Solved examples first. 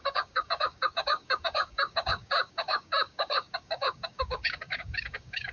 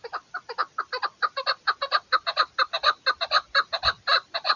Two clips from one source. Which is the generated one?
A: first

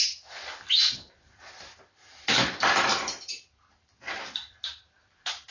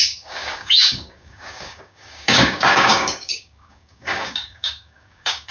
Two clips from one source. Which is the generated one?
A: second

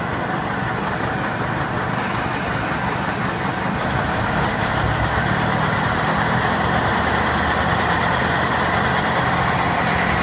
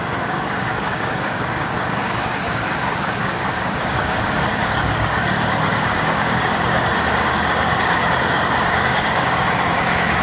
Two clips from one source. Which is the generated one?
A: second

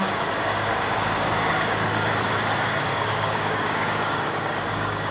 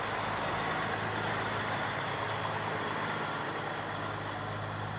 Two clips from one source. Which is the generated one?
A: first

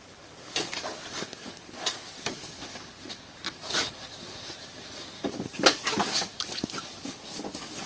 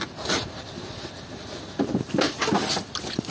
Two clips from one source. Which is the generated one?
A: first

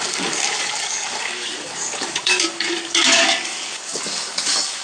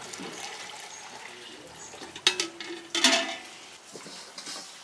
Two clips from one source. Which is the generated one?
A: first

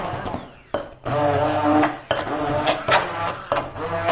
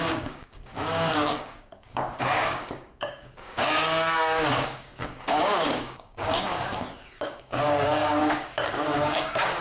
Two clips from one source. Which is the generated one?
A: second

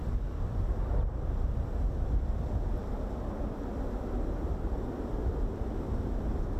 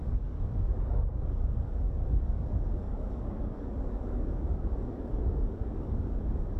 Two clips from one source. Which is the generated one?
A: second